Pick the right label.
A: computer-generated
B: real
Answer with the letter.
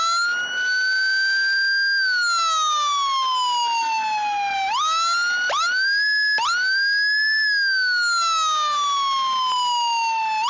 B